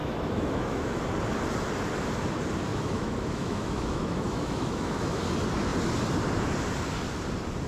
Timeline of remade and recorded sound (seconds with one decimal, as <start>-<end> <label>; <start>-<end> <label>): 0.0-1.0 remade; 1.0-2.7 recorded; 2.7-5.2 remade; 5.2-7.7 recorded

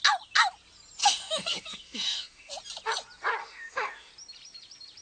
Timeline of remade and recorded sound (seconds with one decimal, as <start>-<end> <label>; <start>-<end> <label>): 0.0-1.0 recorded; 1.0-2.5 remade; 2.5-3.4 recorded; 3.4-4.1 remade; 4.1-5.0 recorded

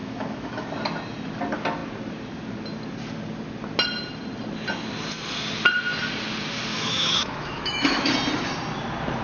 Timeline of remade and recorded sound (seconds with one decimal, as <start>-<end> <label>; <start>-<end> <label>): 0.0-0.7 remade; 0.7-6.7 recorded; 6.7-8.1 remade; 8.1-9.2 recorded

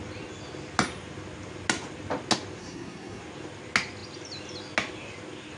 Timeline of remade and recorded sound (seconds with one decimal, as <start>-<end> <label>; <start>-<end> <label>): 0.0-2.6 recorded; 2.6-3.2 remade; 3.2-5.6 recorded

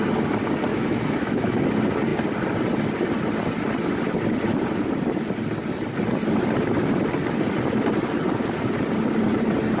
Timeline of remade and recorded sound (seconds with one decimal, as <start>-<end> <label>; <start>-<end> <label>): 0.0-0.7 recorded; 0.7-1.6 remade; 1.6-9.8 recorded

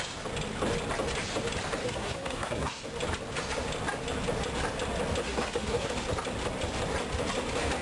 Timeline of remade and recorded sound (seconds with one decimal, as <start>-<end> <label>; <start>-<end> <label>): 0.0-1.8 recorded; 1.8-2.8 remade; 2.8-5.2 recorded; 5.2-5.9 remade; 5.9-7.8 recorded